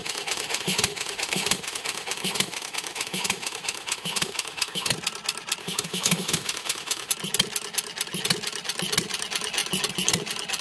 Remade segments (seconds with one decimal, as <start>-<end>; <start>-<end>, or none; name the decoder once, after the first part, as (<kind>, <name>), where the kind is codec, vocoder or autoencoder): 0.0-4.9 (autoencoder, DAC-VAE); 5.6-7.1

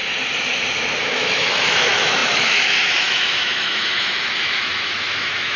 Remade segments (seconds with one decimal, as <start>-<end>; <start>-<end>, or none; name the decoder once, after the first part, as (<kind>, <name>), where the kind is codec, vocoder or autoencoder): 1.0-5.6 (autoencoder, DAC-VAE)

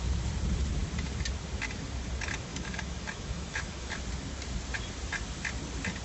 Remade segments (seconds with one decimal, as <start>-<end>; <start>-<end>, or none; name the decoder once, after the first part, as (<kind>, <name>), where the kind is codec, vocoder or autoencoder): 2.5-3.9 (autoencoder, DAC-VAE)

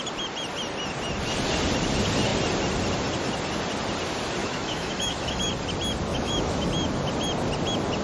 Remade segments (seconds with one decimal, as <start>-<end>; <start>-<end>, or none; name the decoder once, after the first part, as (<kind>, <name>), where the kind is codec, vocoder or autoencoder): 4.4-5.5 (autoencoder, DAC-VAE); 6.1-6.7

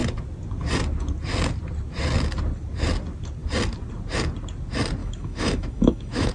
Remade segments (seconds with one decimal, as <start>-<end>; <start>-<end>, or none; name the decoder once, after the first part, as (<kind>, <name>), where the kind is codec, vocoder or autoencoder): 5.0-6.3 (autoencoder, DAC-VAE)

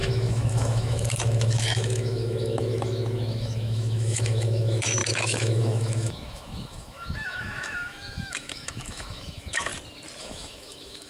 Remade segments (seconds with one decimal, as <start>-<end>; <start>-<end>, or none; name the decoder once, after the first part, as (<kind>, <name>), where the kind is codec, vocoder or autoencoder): 0.0-9.7 (autoencoder, DAC-VAE); 10.2-11.1

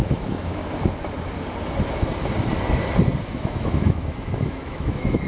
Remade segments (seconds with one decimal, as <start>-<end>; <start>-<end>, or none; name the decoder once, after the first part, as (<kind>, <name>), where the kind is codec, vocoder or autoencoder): 0.0-0.6 (autoencoder, DAC-VAE); 3.4-5.3